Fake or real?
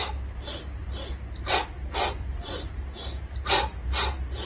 real